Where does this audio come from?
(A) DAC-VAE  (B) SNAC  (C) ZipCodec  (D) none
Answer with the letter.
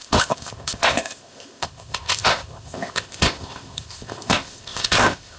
C